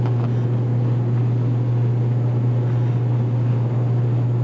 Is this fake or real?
real